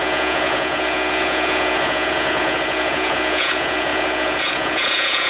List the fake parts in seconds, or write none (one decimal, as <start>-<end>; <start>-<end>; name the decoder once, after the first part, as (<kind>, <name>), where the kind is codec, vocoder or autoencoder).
0.0-5.3 (vocoder, Vocos)